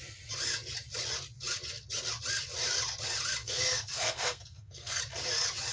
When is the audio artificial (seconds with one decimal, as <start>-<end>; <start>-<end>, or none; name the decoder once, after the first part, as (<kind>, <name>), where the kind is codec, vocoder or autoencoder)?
3.4-5.0 (codec, SNAC)